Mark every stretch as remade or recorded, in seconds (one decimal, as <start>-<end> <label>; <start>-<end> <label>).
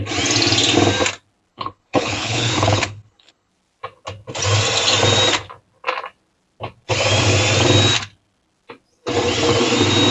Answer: 0.0-1.5 recorded; 1.5-3.5 remade; 3.5-10.1 recorded